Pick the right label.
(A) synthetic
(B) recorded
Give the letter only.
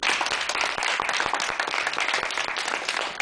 B